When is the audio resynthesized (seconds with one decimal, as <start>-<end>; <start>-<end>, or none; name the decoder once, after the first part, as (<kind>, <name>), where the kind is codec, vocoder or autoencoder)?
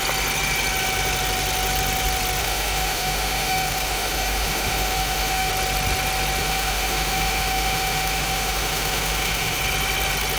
2.4-5.5 (autoencoder, DAC-VAE); 6.4-9.6